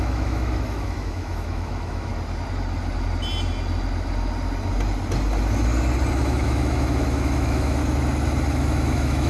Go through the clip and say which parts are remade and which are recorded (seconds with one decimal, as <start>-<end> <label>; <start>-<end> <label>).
0.0-2.1 remade; 2.1-6.1 recorded; 6.1-7.8 remade; 7.8-8.5 recorded; 8.5-9.3 remade